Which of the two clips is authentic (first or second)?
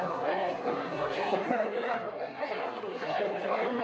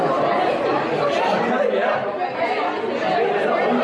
second